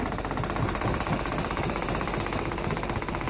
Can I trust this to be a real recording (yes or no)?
yes